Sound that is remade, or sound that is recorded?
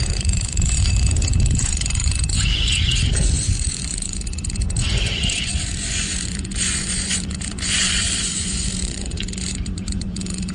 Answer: remade